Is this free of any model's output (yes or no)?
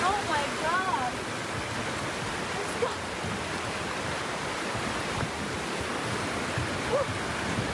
yes